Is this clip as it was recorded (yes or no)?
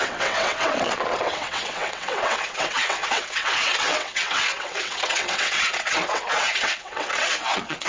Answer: no